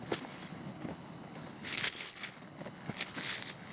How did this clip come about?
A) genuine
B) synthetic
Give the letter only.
B